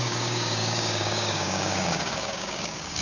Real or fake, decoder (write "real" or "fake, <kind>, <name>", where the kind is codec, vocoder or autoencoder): fake, codec, DAC